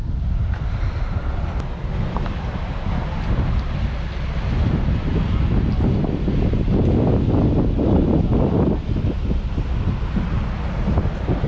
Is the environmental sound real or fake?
real